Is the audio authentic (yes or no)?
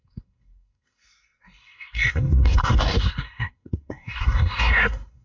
no